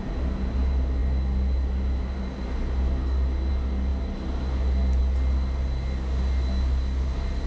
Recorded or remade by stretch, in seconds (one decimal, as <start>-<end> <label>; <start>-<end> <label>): 0.0-7.5 recorded